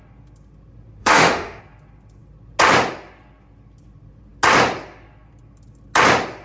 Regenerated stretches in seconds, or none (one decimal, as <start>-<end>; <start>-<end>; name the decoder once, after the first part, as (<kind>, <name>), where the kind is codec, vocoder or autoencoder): 1.0-1.6 (autoencoder, DAC-VAE)